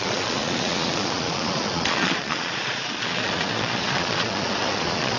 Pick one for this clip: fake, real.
fake